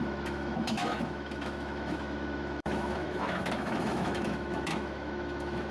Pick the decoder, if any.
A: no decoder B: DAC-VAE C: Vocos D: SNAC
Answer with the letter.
B